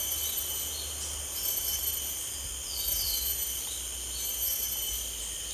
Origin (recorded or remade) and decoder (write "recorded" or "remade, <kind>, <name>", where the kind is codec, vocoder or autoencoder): recorded